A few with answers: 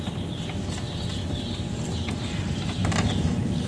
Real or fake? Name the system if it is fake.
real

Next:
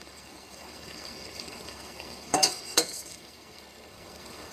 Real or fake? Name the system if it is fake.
fake, codec, SNAC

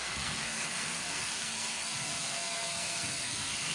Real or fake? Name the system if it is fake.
fake, codec, SNAC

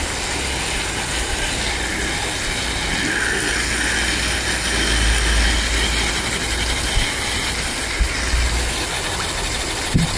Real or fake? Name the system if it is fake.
real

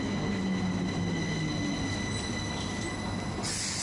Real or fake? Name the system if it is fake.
real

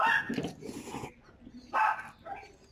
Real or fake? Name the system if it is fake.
real